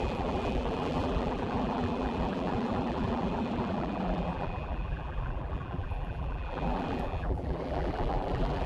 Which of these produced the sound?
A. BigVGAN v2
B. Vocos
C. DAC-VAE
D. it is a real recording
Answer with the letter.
A